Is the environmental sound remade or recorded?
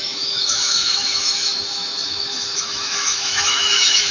remade